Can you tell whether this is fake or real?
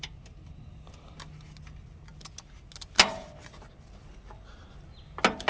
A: real